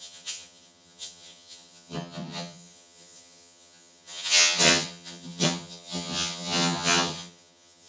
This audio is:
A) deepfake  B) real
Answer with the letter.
A